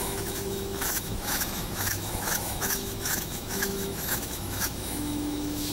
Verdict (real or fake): fake